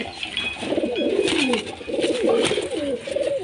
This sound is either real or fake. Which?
real